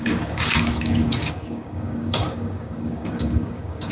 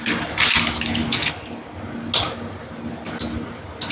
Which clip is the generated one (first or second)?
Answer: first